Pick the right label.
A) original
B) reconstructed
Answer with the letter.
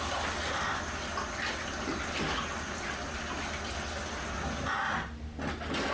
A